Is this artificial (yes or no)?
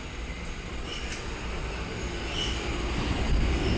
no